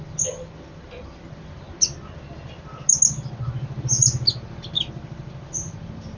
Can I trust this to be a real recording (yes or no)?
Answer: yes